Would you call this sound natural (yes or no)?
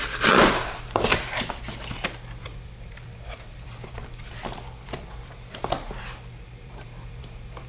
no